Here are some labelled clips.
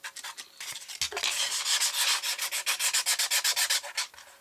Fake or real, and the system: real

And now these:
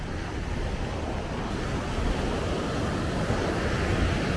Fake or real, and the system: real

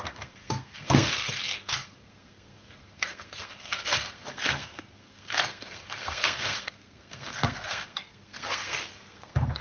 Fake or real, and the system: fake, codec, SNAC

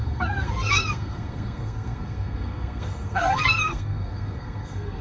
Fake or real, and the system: fake, codec, SNAC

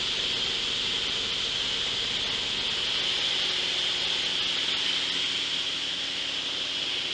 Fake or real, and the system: real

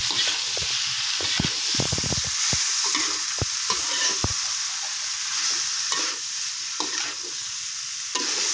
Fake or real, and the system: real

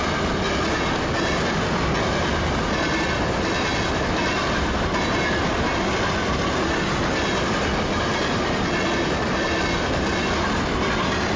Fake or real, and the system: real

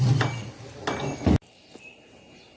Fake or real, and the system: real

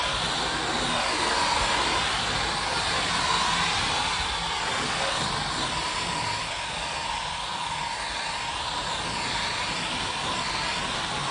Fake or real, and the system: real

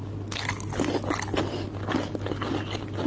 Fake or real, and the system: real